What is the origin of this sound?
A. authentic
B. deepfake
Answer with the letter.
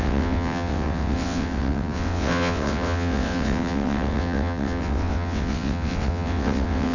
B